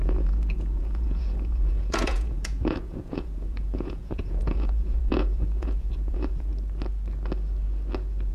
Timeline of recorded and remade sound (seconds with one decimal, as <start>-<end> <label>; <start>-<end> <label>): 0.0-6.5 remade; 6.5-8.3 recorded